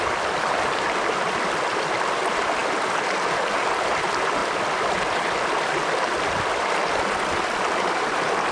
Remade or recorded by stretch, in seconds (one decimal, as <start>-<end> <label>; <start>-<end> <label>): 0.0-8.5 recorded